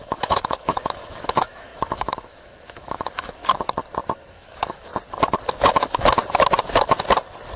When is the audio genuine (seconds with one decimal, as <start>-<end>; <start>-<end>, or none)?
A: 3.4-4.3; 4.9-7.6